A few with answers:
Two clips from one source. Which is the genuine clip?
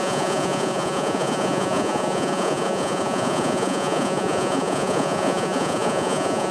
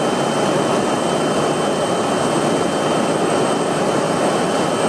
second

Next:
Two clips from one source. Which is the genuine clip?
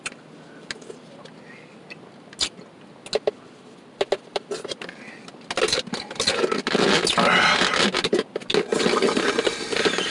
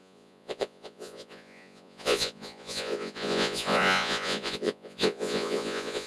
first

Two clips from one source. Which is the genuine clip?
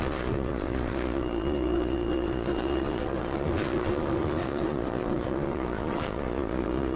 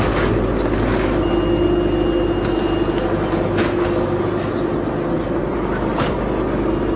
second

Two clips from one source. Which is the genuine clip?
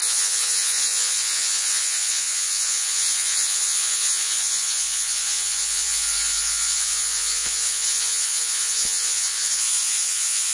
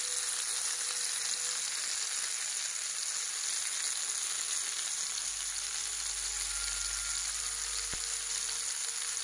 second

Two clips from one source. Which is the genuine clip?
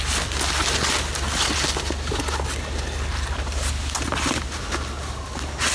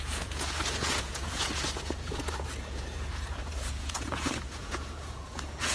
first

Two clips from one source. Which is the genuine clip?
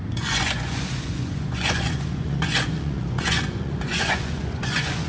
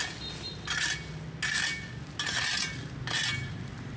second